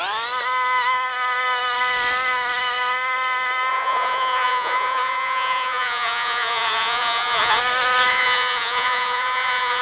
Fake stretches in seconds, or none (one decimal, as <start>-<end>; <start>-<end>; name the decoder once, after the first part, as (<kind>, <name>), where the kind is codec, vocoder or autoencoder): 3.7-7.6 (vocoder, Vocos); 8.1-9.8